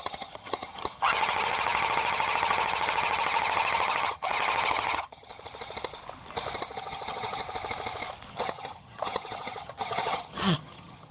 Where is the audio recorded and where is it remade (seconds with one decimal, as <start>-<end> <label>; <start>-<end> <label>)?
0.0-5.3 remade; 5.3-6.7 recorded; 6.7-7.4 remade; 7.4-8.3 recorded; 8.3-11.1 remade